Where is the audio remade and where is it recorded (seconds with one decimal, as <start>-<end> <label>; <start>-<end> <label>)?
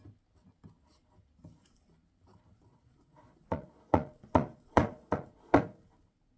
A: 0.0-2.7 recorded; 2.7-5.6 remade; 5.6-6.4 recorded